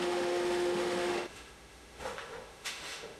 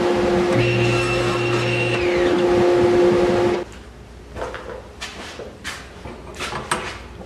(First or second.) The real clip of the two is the second